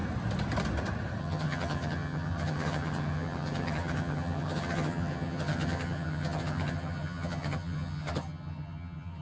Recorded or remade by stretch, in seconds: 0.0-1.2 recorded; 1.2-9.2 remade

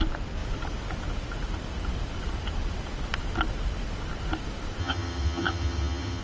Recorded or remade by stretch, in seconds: 0.0-4.8 recorded; 4.8-6.2 remade